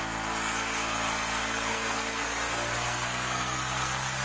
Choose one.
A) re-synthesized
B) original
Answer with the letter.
A